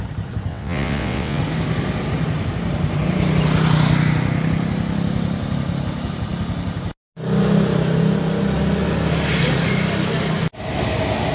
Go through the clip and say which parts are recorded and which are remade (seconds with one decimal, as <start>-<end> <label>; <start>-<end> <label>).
0.0-0.5 recorded; 0.5-1.4 remade; 1.4-11.3 recorded